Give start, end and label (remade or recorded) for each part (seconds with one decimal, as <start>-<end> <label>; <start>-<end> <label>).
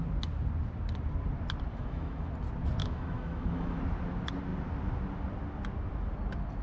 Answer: 0.0-1.7 recorded; 1.7-2.3 remade; 2.3-2.8 recorded; 2.8-3.8 remade; 3.8-6.6 recorded